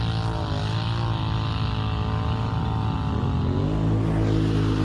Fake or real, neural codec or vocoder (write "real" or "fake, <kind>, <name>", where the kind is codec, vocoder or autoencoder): real